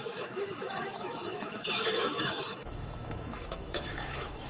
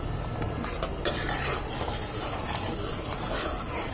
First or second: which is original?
second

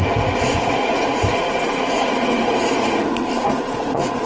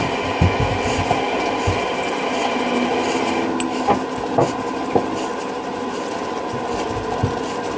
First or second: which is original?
second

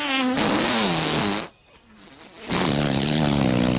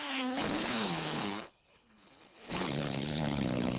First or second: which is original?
first